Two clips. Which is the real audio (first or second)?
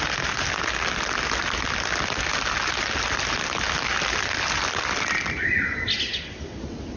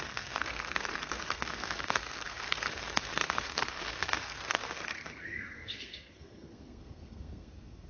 first